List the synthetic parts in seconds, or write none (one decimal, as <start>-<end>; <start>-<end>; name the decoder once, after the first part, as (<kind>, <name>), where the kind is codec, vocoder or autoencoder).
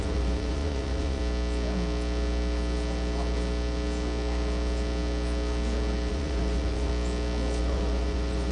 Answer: 0.0-1.2 (vocoder, Vocos); 6.1-6.9; 7.6-8.5